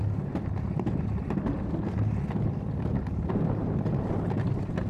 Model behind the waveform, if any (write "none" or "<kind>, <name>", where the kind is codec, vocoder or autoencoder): none